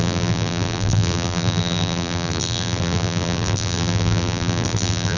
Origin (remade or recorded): remade